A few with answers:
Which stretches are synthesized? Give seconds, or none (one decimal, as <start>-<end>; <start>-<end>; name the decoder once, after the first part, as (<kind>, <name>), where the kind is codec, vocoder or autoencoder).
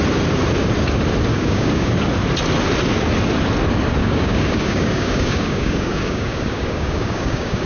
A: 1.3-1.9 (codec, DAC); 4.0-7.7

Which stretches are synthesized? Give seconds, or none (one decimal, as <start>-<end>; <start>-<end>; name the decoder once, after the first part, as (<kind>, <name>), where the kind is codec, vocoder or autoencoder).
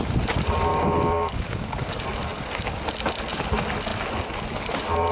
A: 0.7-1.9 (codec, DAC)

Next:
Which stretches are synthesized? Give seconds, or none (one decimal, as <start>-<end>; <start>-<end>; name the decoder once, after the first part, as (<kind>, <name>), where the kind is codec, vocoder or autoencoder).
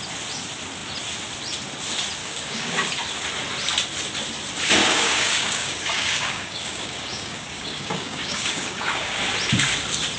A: 2.2-2.9 (codec, DAC); 4.8-9.2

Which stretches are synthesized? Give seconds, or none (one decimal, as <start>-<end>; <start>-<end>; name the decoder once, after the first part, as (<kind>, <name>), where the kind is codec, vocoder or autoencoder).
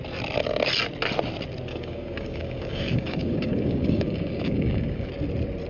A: 1.7-5.1 (codec, DAC)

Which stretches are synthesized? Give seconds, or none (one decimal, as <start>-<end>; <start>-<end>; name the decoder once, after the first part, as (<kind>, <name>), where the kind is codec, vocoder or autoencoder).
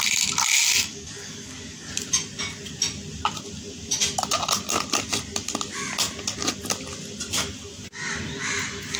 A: 0.8-1.9 (codec, DAC)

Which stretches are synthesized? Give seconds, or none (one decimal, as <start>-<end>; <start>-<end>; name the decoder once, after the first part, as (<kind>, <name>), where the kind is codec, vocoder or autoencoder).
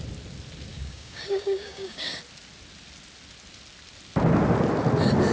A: 0.7-2.2 (codec, DAC)